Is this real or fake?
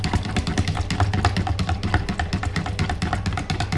real